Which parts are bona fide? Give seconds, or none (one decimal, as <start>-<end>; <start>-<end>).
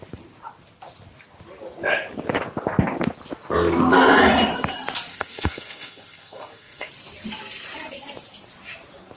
0.0-5.1; 6.9-9.2